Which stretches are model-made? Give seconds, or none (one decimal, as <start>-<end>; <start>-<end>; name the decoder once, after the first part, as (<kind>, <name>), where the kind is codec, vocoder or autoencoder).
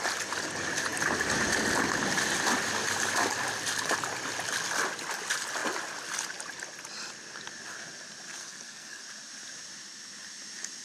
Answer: 8.4-9.0 (codec, SNAC)